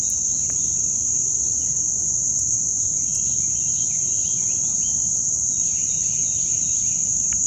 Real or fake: real